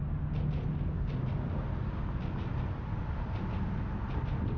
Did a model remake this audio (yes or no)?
no